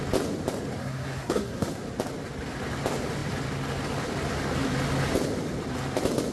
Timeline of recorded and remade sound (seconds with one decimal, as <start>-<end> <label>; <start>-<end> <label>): 0.0-0.8 recorded; 0.8-1.8 remade; 1.8-6.3 recorded